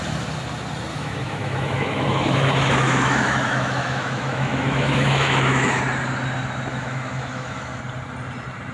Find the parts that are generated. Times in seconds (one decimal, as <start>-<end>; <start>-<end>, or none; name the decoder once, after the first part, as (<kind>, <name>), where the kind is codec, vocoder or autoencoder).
0.9-5.8 (autoencoder, DAC-VAE); 6.7-7.8